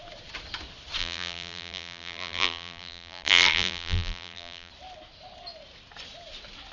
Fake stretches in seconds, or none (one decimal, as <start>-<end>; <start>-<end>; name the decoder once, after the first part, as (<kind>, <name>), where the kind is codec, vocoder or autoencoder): 1.0-4.7 (vocoder, BigVGAN v2)